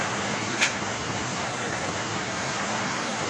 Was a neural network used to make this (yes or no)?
yes